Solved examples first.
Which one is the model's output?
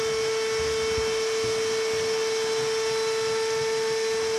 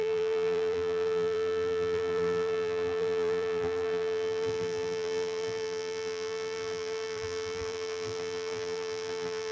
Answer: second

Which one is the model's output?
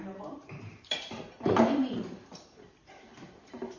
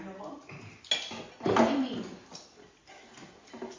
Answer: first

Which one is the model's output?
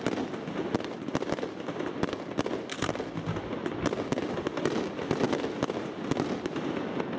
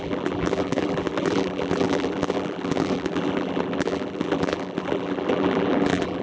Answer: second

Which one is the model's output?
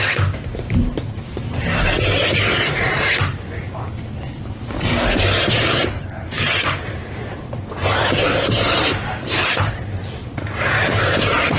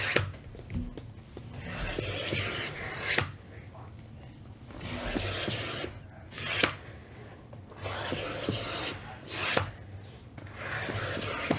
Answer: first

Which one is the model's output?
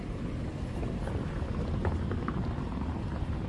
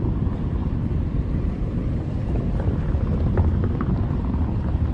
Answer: second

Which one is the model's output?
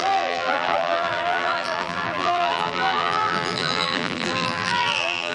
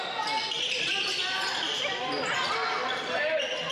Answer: first